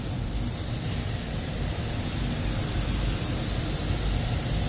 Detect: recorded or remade recorded